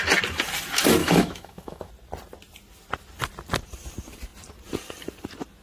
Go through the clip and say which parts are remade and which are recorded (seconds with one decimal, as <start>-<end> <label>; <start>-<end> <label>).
0.0-1.0 recorded; 1.0-1.9 remade; 1.9-5.6 recorded